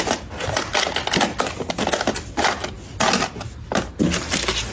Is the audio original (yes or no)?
yes